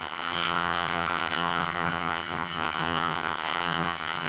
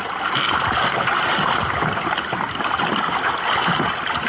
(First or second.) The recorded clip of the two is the second